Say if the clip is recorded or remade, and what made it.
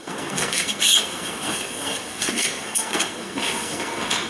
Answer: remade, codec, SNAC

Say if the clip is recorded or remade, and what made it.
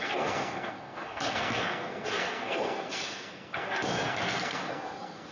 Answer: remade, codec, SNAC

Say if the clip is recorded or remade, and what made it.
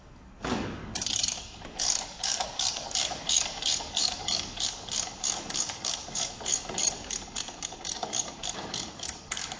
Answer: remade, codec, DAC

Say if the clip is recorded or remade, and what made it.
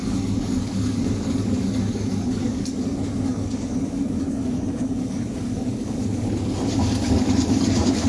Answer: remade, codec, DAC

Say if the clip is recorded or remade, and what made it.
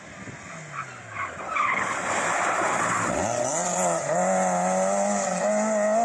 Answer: recorded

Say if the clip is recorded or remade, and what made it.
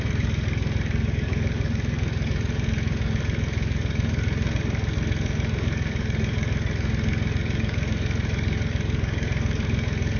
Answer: remade, codec, DAC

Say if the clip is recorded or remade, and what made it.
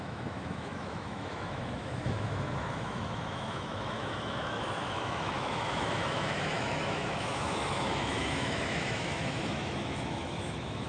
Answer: remade, autoencoder, DAC-VAE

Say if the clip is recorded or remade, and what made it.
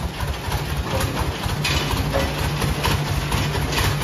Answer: recorded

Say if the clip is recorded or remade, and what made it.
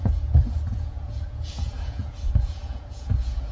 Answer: remade, vocoder, Vocos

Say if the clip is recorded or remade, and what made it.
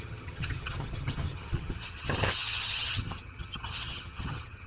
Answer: remade, vocoder, HiFi-GAN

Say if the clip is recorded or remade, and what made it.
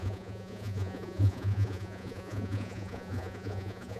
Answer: remade, vocoder, Vocos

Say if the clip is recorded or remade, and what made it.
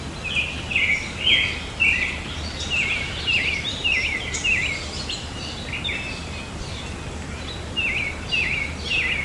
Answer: recorded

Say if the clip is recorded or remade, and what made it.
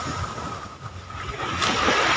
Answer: recorded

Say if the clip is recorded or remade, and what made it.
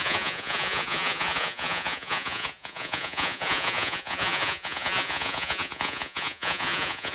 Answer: remade, vocoder, Vocos